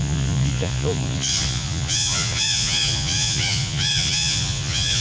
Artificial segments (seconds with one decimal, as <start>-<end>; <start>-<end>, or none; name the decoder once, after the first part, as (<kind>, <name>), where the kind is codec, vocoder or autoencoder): 0.0-5.0 (vocoder, Vocos)